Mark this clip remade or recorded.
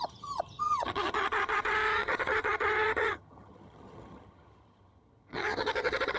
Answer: remade